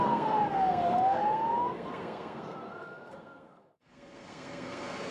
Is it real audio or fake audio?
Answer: fake